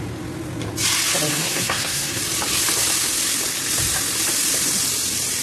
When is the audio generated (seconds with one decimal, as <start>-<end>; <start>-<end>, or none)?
1.3-2.2